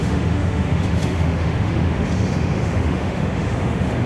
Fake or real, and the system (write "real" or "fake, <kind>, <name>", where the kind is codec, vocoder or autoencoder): fake, autoencoder, DAC-VAE